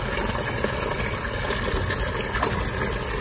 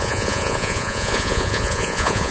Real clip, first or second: first